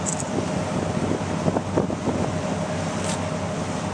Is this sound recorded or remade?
recorded